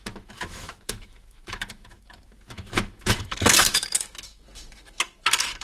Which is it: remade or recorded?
remade